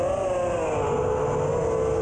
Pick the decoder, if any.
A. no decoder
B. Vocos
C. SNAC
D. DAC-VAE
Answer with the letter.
A